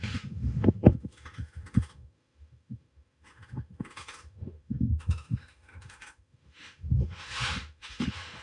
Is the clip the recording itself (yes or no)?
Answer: no